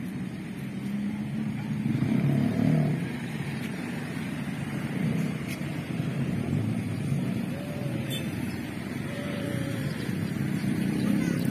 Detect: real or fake fake